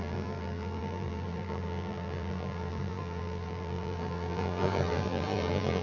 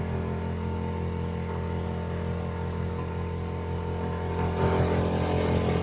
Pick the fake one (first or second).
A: first